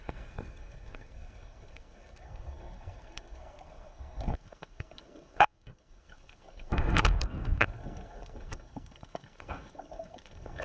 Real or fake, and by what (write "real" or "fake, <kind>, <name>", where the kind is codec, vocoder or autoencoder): fake, codec, SNAC